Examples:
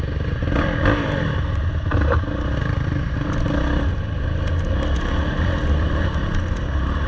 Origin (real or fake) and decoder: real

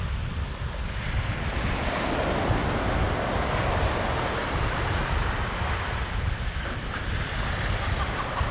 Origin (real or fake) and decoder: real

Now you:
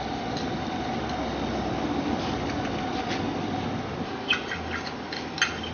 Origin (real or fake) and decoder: real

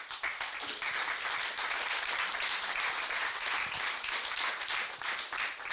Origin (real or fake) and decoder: real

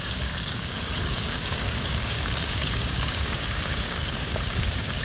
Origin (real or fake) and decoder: fake, codec, DAC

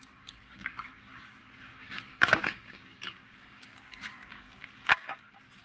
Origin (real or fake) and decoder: fake, codec, DAC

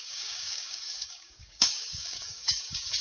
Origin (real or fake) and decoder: fake, codec, DAC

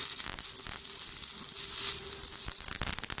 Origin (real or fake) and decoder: real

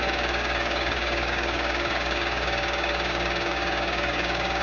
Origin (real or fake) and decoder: fake, codec, DAC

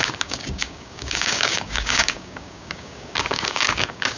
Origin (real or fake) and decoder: fake, codec, DAC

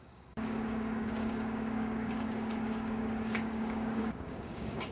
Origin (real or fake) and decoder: fake, codec, DAC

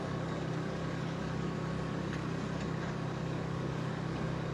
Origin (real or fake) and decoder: fake, codec, DAC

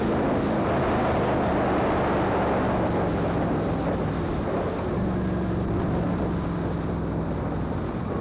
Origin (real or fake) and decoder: real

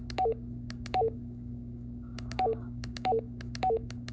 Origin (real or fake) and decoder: fake, codec, DAC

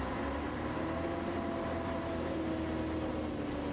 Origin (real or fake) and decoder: real